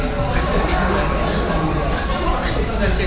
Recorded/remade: recorded